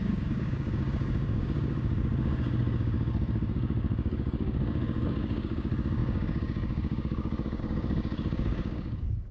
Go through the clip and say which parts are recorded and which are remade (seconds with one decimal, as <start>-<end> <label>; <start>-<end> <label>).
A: 0.0-9.3 remade